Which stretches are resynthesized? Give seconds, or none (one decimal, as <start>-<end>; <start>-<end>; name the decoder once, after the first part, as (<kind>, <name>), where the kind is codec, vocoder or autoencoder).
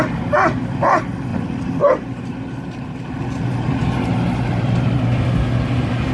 1.3-5.0 (vocoder, BigVGAN v2)